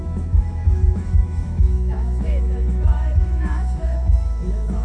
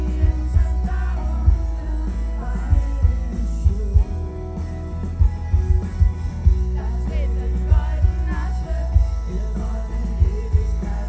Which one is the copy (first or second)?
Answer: first